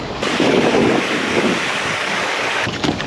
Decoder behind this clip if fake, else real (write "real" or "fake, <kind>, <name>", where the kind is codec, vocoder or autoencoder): fake, codec, DAC